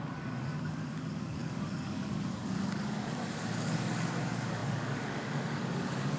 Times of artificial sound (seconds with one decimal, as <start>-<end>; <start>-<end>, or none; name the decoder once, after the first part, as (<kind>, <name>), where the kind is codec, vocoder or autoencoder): 0.0-6.2 (codec, DAC)